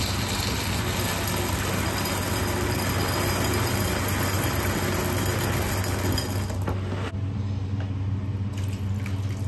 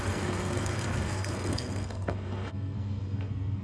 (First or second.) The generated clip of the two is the second